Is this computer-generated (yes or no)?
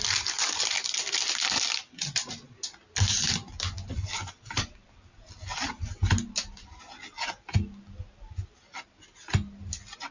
no